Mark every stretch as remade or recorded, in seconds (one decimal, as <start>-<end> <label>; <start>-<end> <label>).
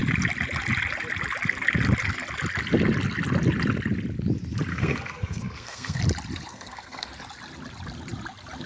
0.0-4.7 recorded; 4.7-6.0 remade; 6.0-6.5 recorded; 6.5-7.1 remade; 7.1-8.7 recorded